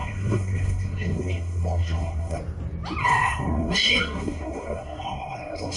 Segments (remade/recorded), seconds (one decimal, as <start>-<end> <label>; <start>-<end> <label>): 0.0-2.4 remade; 2.4-3.0 recorded; 3.0-5.8 remade